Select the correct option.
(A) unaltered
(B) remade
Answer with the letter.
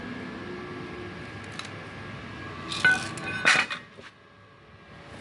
A